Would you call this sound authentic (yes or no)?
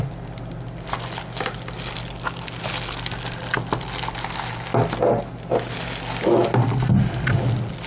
yes